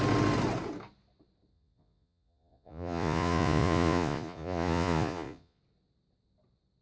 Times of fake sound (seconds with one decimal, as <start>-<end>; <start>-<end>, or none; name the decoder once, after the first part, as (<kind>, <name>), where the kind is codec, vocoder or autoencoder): 1.5-5.6 (vocoder, Vocos)